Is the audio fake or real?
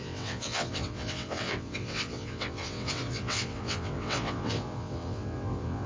fake